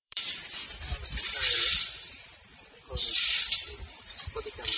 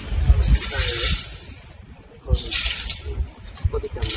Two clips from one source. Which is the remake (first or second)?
first